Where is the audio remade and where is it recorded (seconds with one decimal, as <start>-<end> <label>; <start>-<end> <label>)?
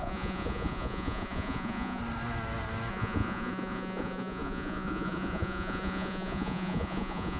0.0-2.0 remade; 2.0-2.9 recorded; 2.9-7.4 remade